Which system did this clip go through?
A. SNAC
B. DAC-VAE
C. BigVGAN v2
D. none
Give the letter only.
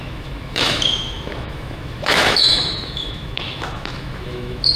B